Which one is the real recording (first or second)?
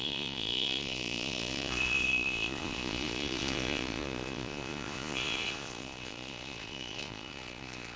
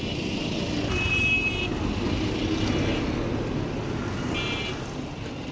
second